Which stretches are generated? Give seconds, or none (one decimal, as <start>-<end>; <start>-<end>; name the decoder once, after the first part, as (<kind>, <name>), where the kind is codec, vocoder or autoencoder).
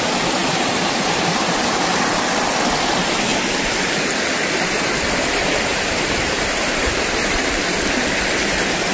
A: 0.4-2.1 (vocoder, BigVGAN v2); 5.7-7.6